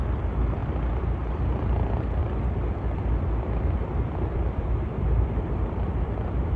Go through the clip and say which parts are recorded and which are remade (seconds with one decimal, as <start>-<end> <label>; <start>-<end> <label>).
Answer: 0.0-0.6 recorded; 0.6-1.4 remade; 1.4-2.2 recorded; 2.2-6.6 remade